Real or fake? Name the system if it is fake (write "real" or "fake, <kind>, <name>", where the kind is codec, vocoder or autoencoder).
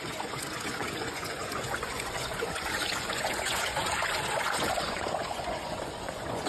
fake, vocoder, Vocos